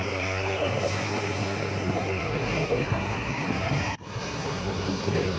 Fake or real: fake